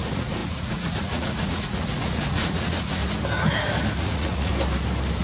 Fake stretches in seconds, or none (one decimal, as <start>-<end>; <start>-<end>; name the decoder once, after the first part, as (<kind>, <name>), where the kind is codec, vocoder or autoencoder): 0.0-3.0 (vocoder, Vocos); 4.0-4.5